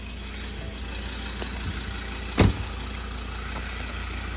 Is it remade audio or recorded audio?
recorded